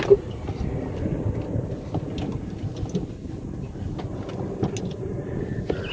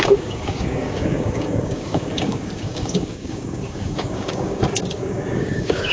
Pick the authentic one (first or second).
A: first